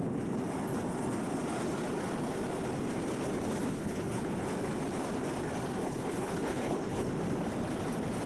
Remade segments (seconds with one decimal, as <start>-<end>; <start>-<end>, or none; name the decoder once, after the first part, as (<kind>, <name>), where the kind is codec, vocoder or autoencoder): 3.6-4.3 (codec, HILCodec); 5.8-7.1